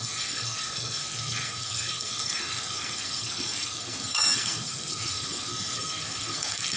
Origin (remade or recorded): remade